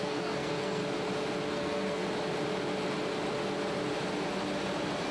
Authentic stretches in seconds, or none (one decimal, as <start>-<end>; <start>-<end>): 0.8-1.5; 2.0-5.1